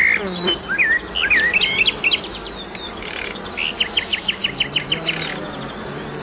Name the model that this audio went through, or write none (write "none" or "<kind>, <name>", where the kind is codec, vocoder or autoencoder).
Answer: none